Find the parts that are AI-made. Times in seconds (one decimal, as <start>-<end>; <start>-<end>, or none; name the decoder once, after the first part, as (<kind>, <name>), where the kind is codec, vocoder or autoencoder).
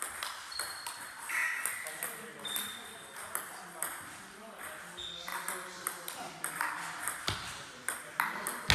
5.3-8.0 (vocoder, BigVGAN v2)